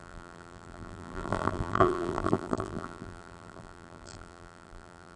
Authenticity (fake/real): fake